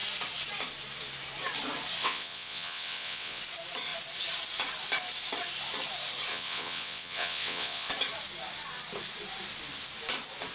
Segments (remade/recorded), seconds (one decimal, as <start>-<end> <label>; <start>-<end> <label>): 0.0-2.0 recorded; 2.0-3.4 remade; 3.4-6.3 recorded; 6.3-7.9 remade; 7.9-10.5 recorded

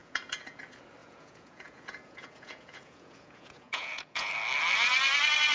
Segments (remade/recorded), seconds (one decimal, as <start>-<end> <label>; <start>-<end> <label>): 0.0-0.6 remade; 0.6-1.0 recorded; 1.0-4.3 remade; 4.3-5.5 recorded

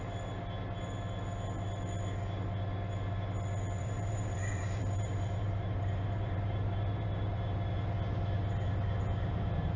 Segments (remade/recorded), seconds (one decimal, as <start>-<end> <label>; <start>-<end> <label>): 0.0-3.8 recorded; 3.8-7.5 remade; 7.5-9.8 recorded

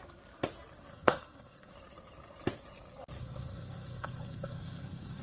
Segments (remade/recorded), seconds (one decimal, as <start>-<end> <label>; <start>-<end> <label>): 0.0-0.9 recorded; 0.9-1.7 remade; 1.7-3.2 recorded; 3.2-5.2 remade

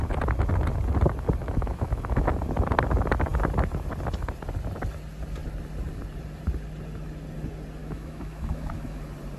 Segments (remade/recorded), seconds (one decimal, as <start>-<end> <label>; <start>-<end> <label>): 0.0-1.4 recorded; 1.4-2.3 remade; 2.3-7.8 recorded; 7.8-9.0 remade; 9.0-9.4 recorded